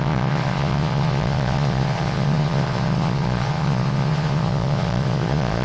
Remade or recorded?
remade